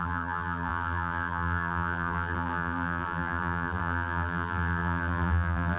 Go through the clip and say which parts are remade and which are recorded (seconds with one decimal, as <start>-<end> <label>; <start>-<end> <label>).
0.0-5.8 remade